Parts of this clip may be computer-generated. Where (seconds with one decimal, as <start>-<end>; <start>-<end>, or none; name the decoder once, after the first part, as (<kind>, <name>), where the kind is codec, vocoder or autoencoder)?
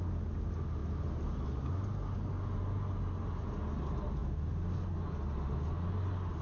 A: none